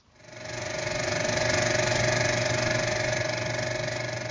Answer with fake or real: real